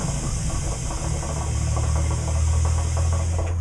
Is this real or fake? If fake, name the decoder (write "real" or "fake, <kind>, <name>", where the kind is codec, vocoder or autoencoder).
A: real